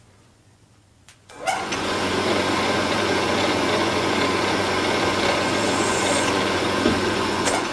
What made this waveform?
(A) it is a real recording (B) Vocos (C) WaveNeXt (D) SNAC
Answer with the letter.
B